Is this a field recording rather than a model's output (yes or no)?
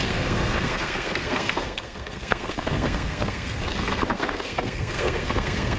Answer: no